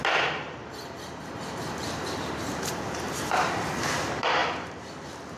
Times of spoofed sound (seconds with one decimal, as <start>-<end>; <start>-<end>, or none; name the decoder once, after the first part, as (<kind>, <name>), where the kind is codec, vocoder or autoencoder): 0.6-3.8 (vocoder, BigVGAN v2)